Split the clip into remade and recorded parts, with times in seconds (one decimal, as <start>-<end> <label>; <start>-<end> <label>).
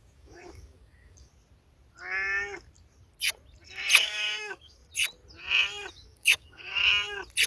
0.0-1.3 remade; 1.3-4.0 recorded; 4.0-4.8 remade; 4.8-5.9 recorded; 5.9-6.8 remade; 6.8-7.5 recorded